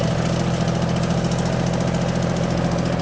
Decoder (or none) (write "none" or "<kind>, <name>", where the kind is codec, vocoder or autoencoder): none